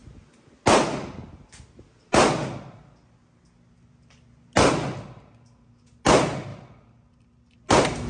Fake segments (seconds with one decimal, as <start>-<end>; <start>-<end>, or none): none